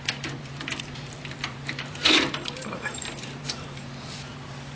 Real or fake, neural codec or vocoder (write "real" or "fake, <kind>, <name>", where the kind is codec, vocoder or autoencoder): fake, vocoder, BigVGAN v2